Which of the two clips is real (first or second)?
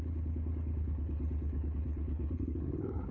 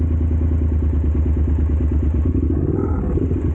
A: second